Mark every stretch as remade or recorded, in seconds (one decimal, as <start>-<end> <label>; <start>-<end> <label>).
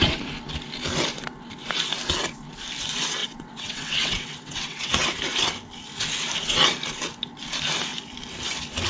0.0-3.2 recorded; 3.2-5.2 remade; 5.2-8.9 recorded